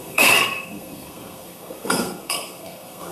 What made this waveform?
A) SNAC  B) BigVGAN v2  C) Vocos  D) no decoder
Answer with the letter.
A